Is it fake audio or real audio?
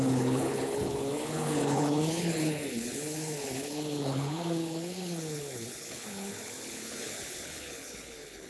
fake